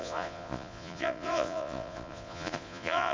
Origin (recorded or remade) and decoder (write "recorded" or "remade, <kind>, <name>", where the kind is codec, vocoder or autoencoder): remade, vocoder, Vocos